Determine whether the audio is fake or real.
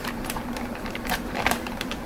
fake